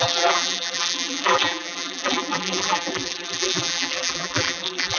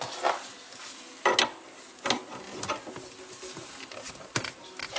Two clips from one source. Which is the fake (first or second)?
first